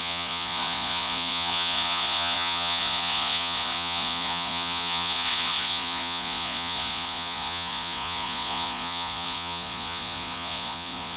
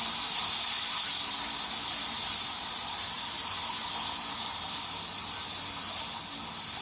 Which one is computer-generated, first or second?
first